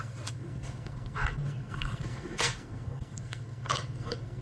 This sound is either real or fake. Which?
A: fake